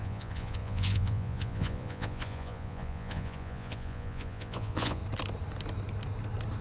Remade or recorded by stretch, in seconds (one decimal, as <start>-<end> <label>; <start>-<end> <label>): 0.0-5.0 remade; 5.0-6.6 recorded